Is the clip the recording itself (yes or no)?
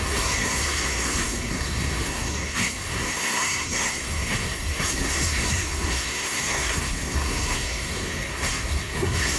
no